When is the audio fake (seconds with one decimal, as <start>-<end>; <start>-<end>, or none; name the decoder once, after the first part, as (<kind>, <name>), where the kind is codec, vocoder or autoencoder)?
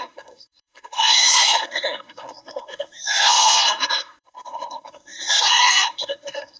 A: 0.0-6.6 (codec, SNAC)